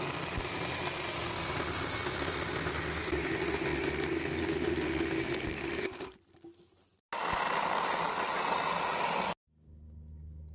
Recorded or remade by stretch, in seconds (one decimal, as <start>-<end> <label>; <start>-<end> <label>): 0.0-4.9 recorded; 4.9-5.8 remade; 5.8-10.5 recorded